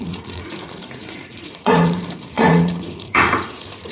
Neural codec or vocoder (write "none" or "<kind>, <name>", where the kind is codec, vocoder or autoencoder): vocoder, Vocos